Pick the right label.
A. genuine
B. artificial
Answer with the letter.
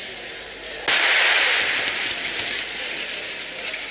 A